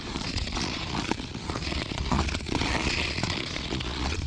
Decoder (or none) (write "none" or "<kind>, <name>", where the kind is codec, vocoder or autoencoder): vocoder, Vocos